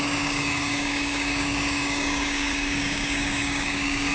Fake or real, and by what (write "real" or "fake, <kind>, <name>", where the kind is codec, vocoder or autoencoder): fake, codec, DAC